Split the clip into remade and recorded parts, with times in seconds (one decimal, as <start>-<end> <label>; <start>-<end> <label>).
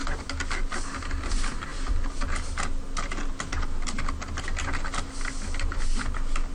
0.0-6.5 recorded